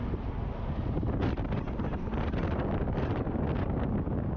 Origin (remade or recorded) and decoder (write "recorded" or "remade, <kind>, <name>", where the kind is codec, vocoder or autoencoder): recorded